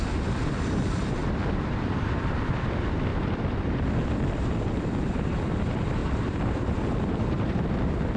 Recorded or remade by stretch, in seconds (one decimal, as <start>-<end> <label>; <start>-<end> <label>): 0.0-1.2 recorded; 1.2-2.5 remade; 2.5-3.1 recorded; 3.1-3.6 remade; 3.6-6.0 recorded; 6.0-8.2 remade